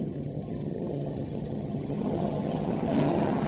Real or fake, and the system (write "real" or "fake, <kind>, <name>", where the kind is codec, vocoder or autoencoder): fake, vocoder, HiFi-GAN